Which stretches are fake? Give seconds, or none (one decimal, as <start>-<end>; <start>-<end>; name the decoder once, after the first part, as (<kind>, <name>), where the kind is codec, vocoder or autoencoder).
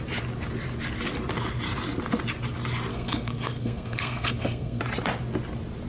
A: 2.9-4.8 (codec, SNAC)